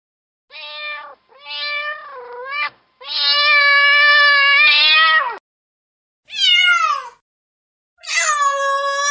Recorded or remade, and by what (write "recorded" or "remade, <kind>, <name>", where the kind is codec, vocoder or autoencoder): recorded